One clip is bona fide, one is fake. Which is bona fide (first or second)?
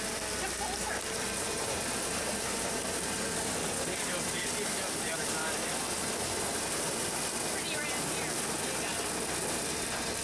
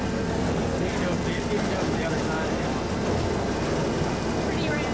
second